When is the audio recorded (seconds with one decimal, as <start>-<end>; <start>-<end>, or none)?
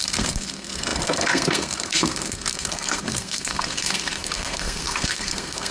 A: none